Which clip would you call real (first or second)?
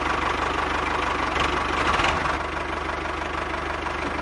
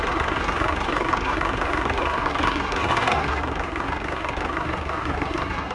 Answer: first